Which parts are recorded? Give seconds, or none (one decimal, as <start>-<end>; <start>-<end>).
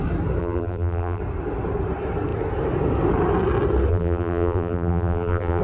0.0-0.4; 1.2-3.9